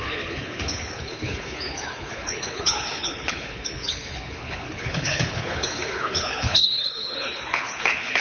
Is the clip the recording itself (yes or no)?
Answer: no